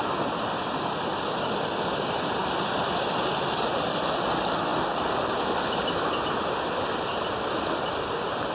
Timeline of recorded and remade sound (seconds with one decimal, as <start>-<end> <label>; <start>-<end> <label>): 0.0-8.5 recorded

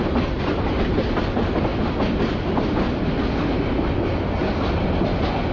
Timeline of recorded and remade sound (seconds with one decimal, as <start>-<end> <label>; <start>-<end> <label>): 0.0-5.5 recorded

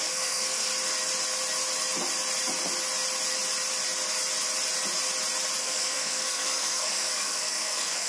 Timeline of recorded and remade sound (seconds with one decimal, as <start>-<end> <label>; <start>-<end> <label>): 0.0-0.7 remade; 0.7-5.6 recorded; 5.6-8.1 remade

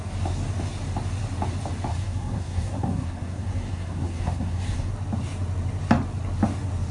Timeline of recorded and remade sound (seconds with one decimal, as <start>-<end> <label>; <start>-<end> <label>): 0.0-1.9 recorded; 1.9-4.9 remade; 4.9-6.9 recorded